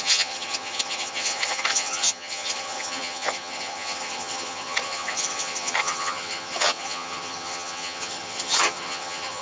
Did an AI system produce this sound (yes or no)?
yes